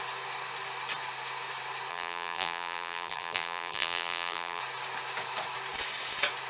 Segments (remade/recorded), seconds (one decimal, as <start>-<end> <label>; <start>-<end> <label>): 0.0-1.9 recorded; 1.9-4.6 remade; 4.6-6.5 recorded